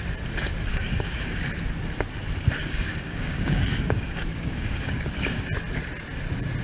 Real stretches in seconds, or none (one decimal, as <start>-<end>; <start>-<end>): 0.0-0.7; 1.4-2.6; 5.4-6.6